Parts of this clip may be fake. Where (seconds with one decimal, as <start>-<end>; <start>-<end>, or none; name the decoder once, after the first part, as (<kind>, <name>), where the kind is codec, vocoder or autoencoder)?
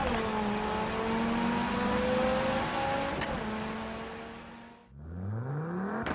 none